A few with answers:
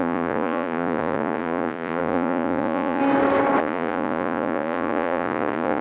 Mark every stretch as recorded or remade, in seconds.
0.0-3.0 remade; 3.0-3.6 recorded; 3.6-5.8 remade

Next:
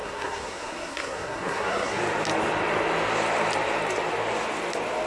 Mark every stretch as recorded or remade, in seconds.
0.0-2.0 remade; 2.0-5.1 recorded

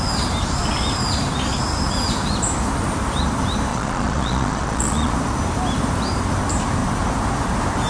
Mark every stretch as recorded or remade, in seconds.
0.0-3.7 recorded; 3.7-5.1 remade; 5.1-7.9 recorded

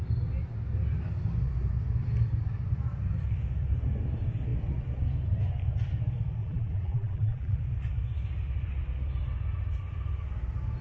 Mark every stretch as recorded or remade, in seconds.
0.0-6.4 recorded; 6.4-7.6 remade; 7.6-10.8 recorded